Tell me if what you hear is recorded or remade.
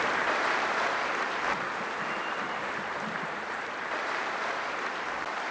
remade